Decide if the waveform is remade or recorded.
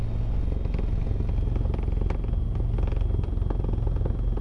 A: recorded